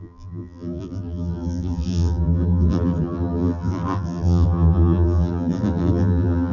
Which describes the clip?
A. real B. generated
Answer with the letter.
B